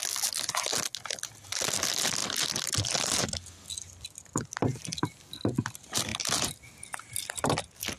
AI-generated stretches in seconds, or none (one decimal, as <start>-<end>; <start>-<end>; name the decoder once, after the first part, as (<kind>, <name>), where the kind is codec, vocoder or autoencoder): none